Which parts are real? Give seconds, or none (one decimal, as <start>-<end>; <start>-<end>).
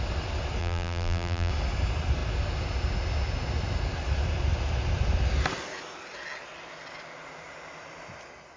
0.0-0.6; 1.5-8.6